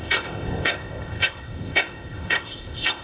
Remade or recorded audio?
remade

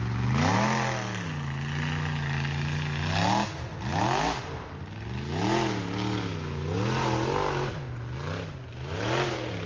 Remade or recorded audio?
recorded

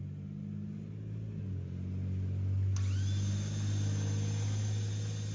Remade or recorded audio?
recorded